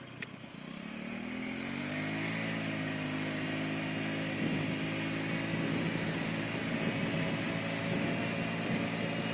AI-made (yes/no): no